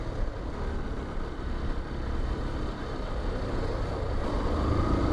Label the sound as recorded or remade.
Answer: recorded